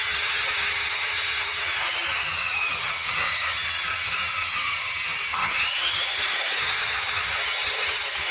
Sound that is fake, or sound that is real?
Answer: fake